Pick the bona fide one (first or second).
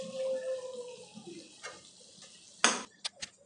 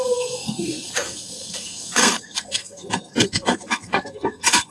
first